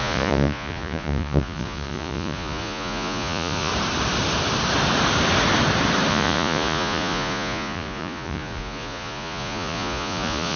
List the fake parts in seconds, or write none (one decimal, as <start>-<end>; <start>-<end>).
0.0-3.7; 6.1-10.6